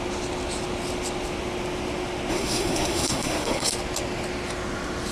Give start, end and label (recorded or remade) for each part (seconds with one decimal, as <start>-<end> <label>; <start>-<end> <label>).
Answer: 0.0-2.3 recorded; 2.3-3.7 remade; 3.7-5.1 recorded